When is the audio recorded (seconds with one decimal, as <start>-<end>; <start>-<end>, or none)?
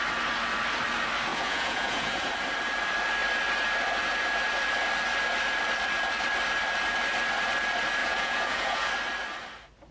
0.0-1.3; 2.3-8.0; 8.9-9.9